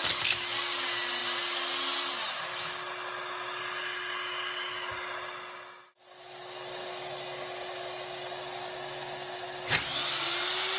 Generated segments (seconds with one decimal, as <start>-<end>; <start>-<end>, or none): none

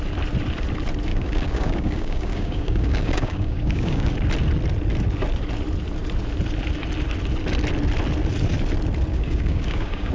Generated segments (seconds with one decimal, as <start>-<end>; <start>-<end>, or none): 1.1-4.1; 9.1-10.1